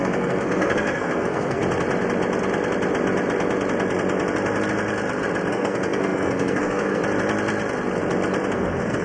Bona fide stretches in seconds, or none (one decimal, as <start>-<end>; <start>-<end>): 1.6-5.5; 7.0-8.5